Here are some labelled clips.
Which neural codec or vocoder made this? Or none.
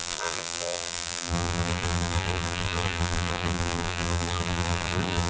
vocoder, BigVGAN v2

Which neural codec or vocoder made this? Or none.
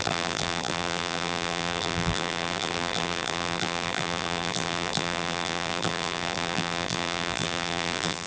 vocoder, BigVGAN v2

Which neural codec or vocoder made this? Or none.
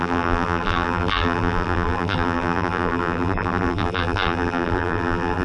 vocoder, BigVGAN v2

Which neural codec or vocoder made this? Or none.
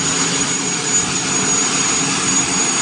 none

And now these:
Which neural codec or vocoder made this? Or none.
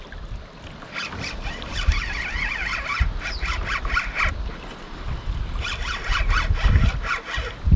none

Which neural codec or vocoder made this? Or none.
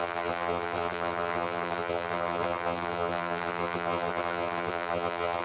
vocoder, BigVGAN v2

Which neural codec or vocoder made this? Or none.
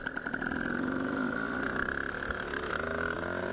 vocoder, BigVGAN v2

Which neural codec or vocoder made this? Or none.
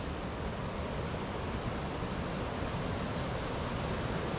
none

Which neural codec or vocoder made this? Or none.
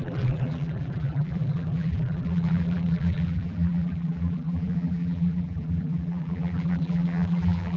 vocoder, BigVGAN v2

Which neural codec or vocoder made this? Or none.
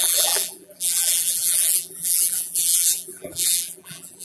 vocoder, BigVGAN v2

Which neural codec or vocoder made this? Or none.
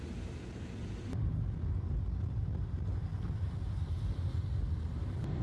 none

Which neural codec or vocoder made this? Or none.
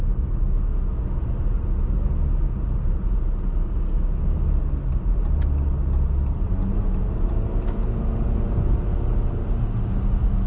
none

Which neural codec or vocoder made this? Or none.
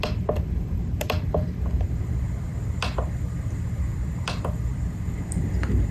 vocoder, BigVGAN v2